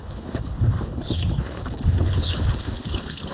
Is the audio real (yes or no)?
no